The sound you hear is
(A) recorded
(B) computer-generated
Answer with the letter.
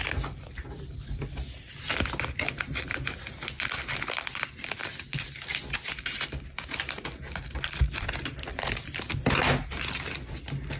A